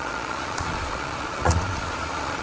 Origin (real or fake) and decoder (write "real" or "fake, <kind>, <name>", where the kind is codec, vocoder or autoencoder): fake, vocoder, Vocos